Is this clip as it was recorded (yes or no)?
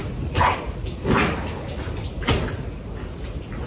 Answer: yes